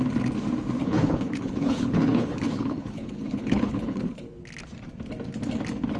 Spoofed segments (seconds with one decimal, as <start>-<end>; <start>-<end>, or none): 0.8-4.4